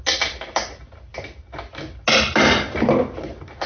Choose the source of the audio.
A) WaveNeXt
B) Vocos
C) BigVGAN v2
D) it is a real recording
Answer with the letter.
D